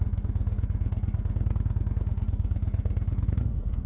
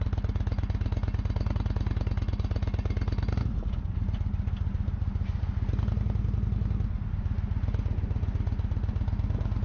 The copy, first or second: first